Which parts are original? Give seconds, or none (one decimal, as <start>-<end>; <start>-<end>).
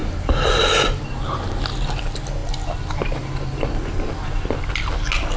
0.0-5.4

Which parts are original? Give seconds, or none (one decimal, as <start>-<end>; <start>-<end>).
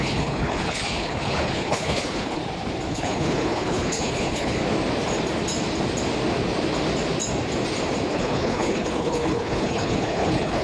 2.4-2.9; 4.6-8.1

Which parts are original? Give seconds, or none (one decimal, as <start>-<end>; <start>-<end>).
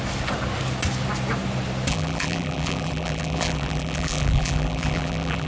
0.0-1.9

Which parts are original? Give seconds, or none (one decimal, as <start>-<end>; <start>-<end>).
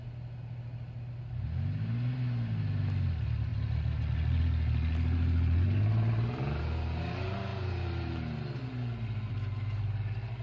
0.0-10.4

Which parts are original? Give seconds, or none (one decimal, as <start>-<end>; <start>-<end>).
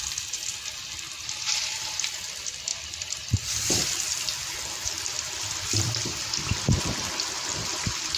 0.0-2.7; 6.8-7.5